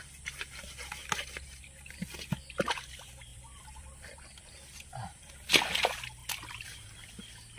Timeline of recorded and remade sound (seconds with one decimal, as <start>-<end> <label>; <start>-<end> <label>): 0.0-3.3 recorded; 3.3-4.8 remade; 4.8-7.6 recorded